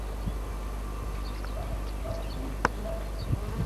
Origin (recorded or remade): recorded